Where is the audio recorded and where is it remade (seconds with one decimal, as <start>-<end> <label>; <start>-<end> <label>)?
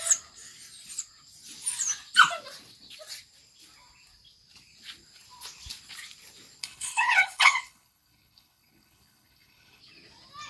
0.0-6.6 recorded; 6.6-9.8 remade; 9.8-10.5 recorded